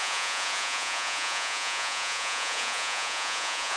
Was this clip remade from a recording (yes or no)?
yes